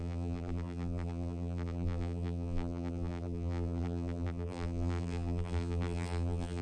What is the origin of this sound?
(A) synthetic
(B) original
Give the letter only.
A